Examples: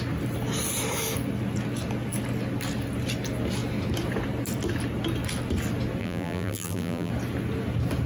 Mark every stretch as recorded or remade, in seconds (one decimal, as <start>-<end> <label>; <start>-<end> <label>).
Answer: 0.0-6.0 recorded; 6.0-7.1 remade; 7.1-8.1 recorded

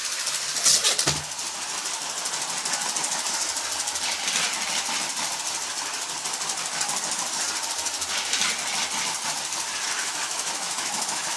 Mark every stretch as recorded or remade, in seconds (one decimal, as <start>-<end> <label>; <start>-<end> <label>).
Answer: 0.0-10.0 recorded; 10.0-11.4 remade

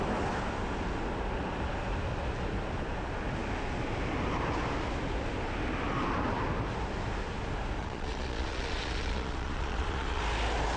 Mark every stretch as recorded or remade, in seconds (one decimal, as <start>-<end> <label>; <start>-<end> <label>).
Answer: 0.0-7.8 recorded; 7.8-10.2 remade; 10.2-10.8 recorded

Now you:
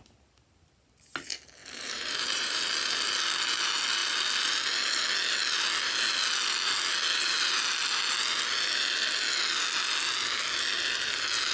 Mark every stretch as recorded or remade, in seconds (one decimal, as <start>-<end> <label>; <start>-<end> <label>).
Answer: 0.0-1.6 recorded; 1.6-2.6 remade; 2.6-11.5 recorded

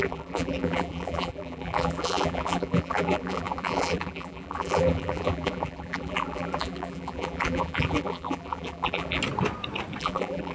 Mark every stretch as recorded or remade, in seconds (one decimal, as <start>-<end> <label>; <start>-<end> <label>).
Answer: 0.0-9.2 remade; 9.2-10.0 recorded; 10.0-10.5 remade

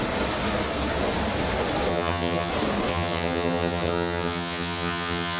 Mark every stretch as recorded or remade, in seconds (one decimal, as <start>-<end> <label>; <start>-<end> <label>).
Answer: 0.0-1.9 recorded; 1.9-2.5 remade; 2.5-2.9 recorded; 2.9-5.4 remade